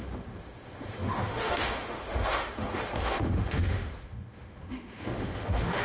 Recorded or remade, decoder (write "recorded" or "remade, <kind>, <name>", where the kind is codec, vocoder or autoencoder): remade, autoencoder, DAC-VAE